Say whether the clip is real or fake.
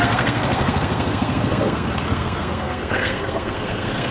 fake